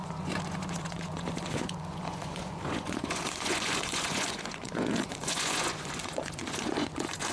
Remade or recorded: remade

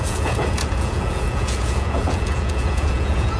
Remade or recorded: remade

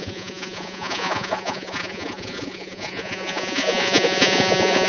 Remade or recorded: remade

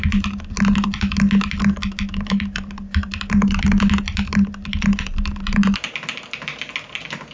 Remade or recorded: recorded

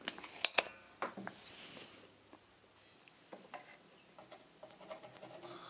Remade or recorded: recorded